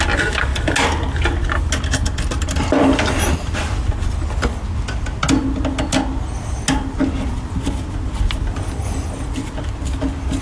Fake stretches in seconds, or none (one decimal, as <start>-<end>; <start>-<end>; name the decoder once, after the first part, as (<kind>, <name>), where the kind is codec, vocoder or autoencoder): none